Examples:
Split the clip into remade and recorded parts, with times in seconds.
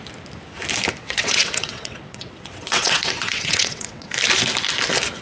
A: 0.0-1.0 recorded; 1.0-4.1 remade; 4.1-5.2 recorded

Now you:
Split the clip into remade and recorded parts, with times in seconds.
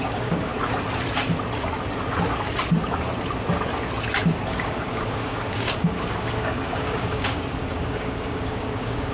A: 0.0-0.5 remade; 0.5-4.5 recorded; 4.5-9.1 remade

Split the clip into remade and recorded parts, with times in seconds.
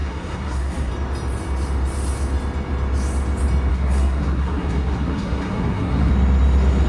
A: 0.0-0.9 remade; 0.9-3.7 recorded; 3.7-6.1 remade; 6.1-6.9 recorded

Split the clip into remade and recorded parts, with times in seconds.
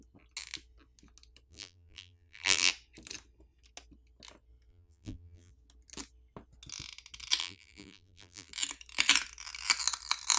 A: 0.0-1.5 recorded; 1.5-2.7 remade; 2.7-4.7 recorded; 4.7-5.5 remade; 5.5-7.4 recorded; 7.4-8.5 remade; 8.5-10.4 recorded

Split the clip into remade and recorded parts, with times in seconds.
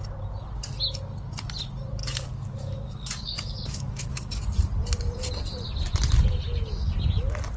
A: 0.0-2.0 recorded; 2.0-4.4 remade; 4.4-7.6 recorded